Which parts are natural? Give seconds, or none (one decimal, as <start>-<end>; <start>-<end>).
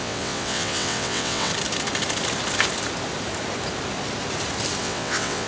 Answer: 1.5-4.8